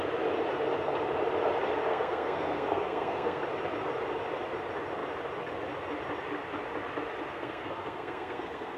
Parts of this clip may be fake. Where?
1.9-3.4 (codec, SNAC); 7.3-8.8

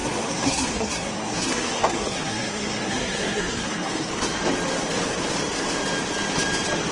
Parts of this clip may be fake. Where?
0.0-4.1 (codec, SNAC)

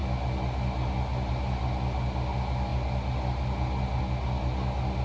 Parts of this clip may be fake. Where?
none

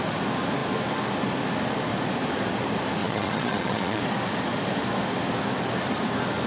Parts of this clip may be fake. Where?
3.0-4.0 (vocoder, Vocos)

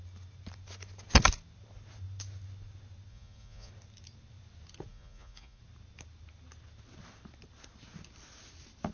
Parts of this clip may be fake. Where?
3.1-3.7 (vocoder, Vocos); 4.9-5.6

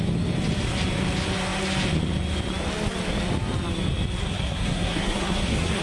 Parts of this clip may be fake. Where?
4.2-5.8 (codec, SNAC)